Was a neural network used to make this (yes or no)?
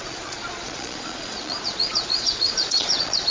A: yes